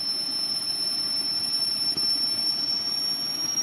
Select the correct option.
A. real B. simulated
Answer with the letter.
B